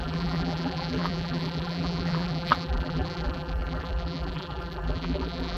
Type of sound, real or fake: fake